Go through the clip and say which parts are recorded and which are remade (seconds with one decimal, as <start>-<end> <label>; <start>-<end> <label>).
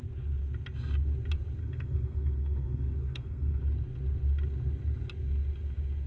0.0-1.6 recorded; 1.6-3.6 remade; 3.6-6.1 recorded